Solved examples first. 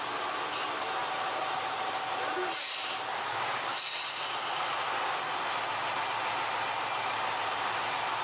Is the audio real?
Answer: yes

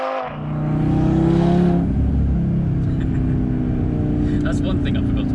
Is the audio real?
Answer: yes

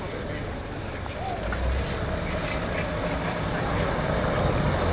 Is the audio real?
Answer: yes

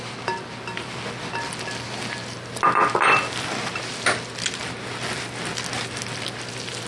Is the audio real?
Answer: yes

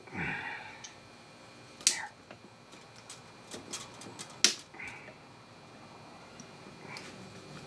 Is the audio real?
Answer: yes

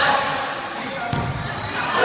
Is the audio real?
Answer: yes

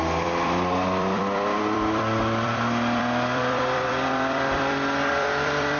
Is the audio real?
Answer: no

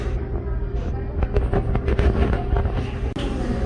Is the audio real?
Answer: yes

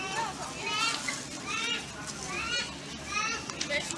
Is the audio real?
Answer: yes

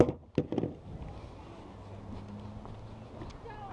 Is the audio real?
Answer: yes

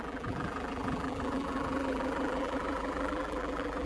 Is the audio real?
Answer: no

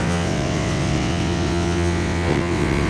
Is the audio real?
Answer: no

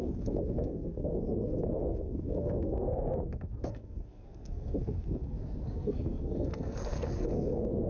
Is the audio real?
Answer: no